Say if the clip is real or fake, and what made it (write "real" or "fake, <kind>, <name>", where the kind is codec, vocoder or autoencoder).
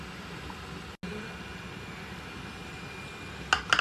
real